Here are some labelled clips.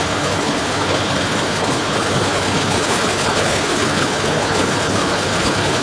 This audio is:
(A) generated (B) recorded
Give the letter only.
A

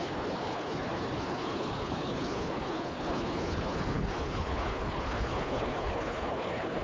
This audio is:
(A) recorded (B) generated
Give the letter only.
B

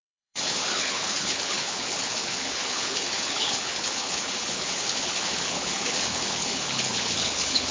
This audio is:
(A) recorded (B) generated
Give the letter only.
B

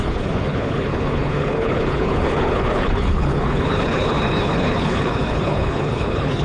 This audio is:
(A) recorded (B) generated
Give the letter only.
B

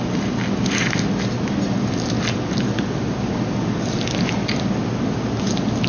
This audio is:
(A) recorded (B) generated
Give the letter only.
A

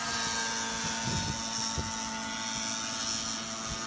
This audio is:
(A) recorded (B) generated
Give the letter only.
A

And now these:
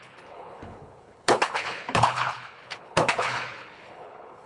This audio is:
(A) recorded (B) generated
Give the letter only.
B